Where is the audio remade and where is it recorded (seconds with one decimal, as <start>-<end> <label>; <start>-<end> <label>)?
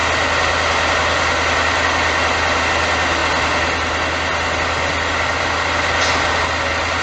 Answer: 0.0-7.0 recorded